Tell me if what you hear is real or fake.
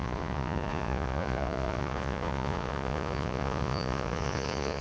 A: fake